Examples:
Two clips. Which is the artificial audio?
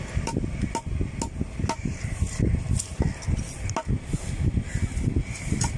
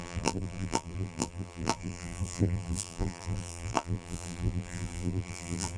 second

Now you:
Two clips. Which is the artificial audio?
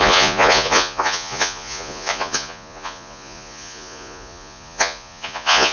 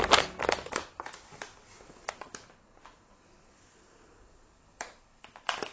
first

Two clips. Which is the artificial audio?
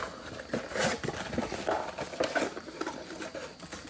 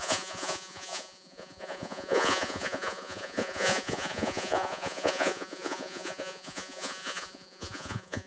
second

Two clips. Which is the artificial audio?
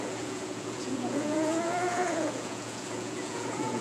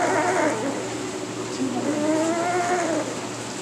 first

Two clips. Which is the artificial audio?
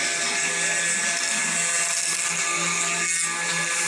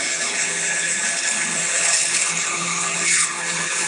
second